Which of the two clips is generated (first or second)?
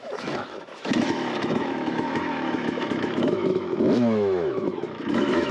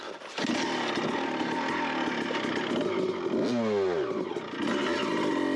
first